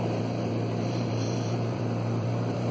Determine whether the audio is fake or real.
fake